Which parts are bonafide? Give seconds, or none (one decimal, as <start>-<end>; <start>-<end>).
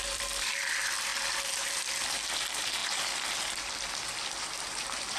1.1-1.7